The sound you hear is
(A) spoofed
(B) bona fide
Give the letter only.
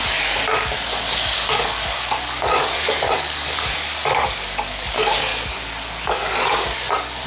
A